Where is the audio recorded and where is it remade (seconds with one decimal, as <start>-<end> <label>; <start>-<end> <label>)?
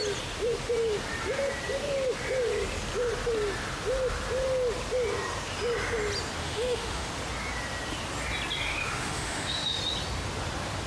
0.0-6.4 recorded; 6.4-7.1 remade; 7.1-8.7 recorded; 8.7-9.8 remade; 9.8-10.9 recorded